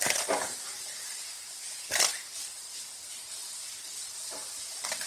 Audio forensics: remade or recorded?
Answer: recorded